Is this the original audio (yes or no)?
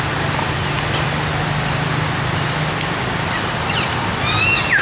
yes